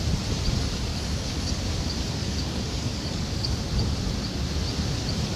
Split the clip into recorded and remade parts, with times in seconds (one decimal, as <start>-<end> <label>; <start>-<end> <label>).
0.0-0.9 recorded; 0.9-1.4 remade; 1.4-2.2 recorded; 2.2-3.6 remade; 3.6-5.4 recorded